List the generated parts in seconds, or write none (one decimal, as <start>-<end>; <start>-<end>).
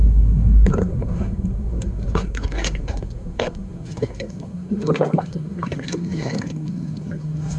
0.0-7.6